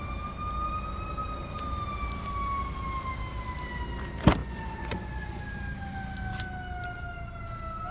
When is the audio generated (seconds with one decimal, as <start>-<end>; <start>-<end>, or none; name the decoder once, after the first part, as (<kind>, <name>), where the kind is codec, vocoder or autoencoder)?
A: 4.4-5.4 (vocoder, Vocos)